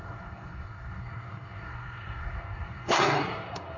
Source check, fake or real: fake